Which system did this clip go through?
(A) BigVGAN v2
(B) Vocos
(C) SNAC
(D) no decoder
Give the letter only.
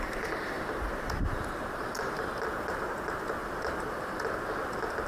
D